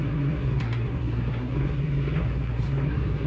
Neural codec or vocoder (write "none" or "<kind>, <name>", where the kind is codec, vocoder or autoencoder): codec, SNAC